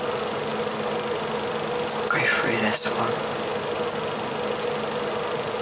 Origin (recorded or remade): recorded